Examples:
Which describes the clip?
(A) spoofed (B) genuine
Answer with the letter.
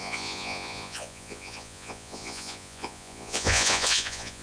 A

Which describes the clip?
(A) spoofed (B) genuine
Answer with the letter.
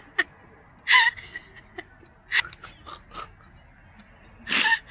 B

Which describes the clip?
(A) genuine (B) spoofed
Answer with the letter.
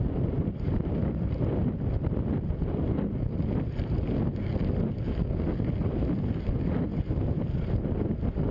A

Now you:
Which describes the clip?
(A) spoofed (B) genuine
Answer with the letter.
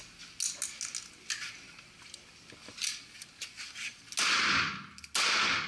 B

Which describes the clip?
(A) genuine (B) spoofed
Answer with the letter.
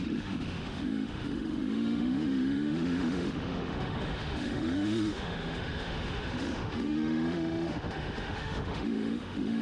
B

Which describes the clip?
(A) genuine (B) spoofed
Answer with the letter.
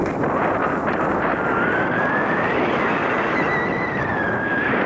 A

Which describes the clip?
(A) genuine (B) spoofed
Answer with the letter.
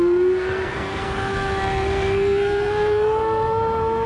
B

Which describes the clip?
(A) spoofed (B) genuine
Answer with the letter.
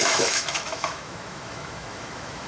A